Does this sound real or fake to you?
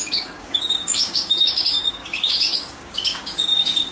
fake